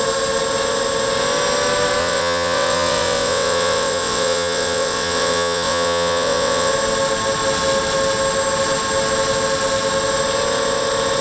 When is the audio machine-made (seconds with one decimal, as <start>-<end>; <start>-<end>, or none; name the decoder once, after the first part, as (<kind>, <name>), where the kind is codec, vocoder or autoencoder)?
2.0-6.7 (vocoder, WaveNeXt)